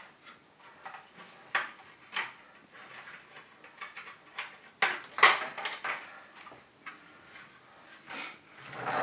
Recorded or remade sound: recorded